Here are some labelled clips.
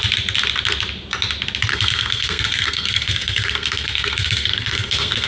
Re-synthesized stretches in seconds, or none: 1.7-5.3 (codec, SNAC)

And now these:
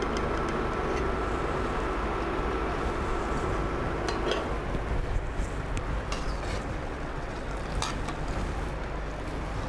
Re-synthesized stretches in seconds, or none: 6.8-7.5 (vocoder, WaveNeXt)

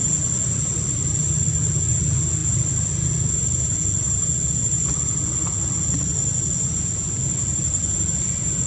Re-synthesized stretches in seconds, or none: none